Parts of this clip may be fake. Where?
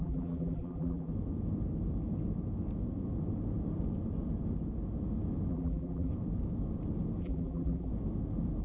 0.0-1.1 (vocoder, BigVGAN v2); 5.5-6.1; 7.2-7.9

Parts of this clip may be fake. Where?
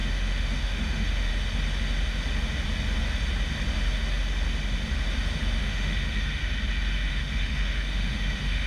0.0-1.3 (autoencoder, DAC-VAE); 5.6-6.4; 7.1-8.7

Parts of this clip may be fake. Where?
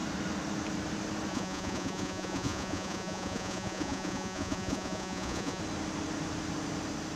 1.3-5.6 (vocoder, Vocos)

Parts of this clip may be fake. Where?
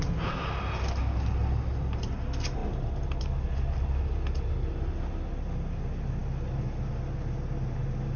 none